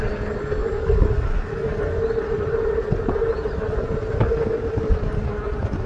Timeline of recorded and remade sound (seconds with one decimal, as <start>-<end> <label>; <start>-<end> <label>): 0.0-5.9 recorded